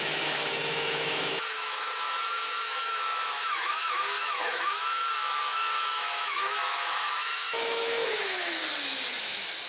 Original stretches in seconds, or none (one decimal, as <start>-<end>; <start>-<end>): 8.6-9.2